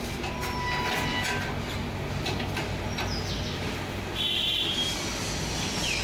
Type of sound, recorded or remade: recorded